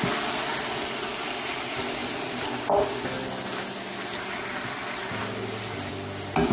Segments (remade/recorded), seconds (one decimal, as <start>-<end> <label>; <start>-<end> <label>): 0.0-6.5 recorded